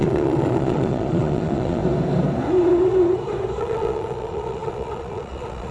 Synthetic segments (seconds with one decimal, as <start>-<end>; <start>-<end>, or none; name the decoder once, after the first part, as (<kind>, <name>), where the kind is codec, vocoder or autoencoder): 0.0-1.8 (vocoder, Vocos); 3.6-5.7